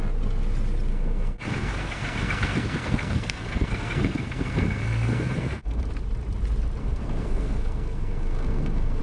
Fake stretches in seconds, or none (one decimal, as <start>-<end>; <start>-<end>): 0.9-5.8; 6.8-9.0